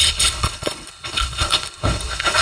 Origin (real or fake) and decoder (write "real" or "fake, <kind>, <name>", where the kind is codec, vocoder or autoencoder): fake, codec, HILCodec